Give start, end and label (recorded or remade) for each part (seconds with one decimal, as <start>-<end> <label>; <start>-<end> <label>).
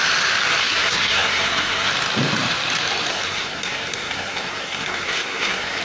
0.0-0.6 recorded; 0.6-1.9 remade; 1.9-3.1 recorded; 3.1-5.8 remade